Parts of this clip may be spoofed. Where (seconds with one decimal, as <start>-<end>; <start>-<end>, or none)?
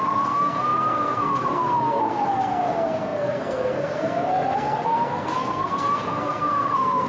0.0-7.1